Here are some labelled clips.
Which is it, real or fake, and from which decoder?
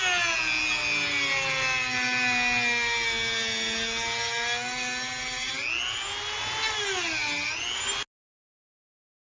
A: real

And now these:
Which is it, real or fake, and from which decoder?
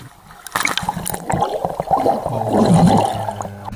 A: real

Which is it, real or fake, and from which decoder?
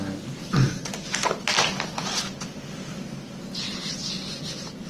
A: real